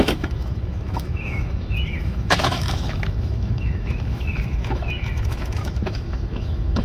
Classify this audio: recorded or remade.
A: remade